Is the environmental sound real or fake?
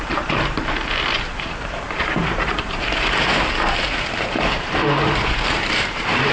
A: fake